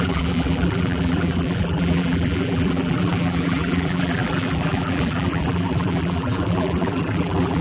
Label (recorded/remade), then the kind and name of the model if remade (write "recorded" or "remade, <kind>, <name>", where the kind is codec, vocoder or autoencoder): remade, vocoder, BigVGAN v2